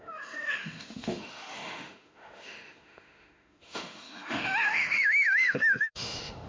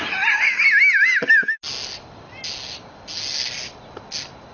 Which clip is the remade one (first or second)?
first